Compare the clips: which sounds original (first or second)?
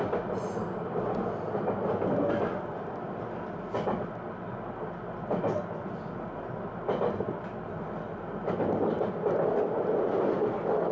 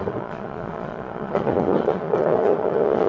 first